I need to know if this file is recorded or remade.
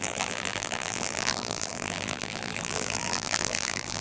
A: remade